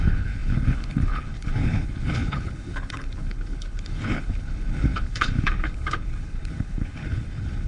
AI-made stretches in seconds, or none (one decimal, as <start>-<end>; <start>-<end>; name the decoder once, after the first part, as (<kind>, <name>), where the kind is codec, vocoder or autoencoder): 0.0-7.7 (codec, HILCodec)